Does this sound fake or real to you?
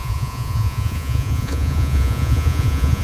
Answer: fake